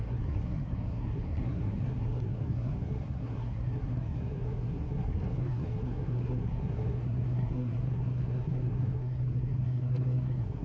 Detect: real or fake fake